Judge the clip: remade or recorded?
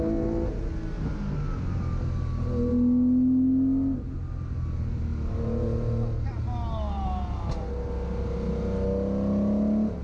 recorded